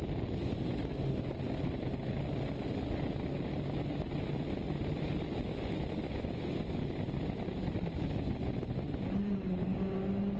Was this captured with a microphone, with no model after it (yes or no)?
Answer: yes